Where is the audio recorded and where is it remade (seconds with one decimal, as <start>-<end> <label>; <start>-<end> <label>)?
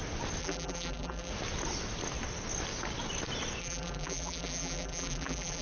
0.0-0.4 recorded; 0.4-1.3 remade; 1.3-3.6 recorded; 3.6-5.6 remade